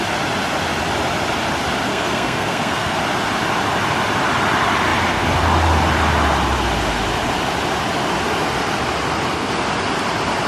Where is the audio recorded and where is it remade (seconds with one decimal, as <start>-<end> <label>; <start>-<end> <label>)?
0.0-1.9 recorded; 1.9-3.0 remade; 3.0-10.5 recorded